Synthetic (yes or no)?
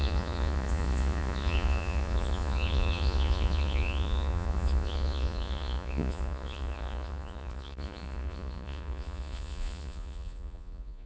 yes